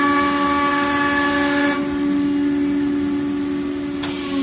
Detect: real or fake real